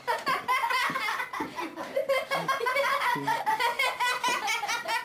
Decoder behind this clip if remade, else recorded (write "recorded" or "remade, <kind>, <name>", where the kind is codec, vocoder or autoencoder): recorded